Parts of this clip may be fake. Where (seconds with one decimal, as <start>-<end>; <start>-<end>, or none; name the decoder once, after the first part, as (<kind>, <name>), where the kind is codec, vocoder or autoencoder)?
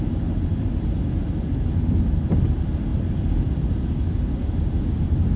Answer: none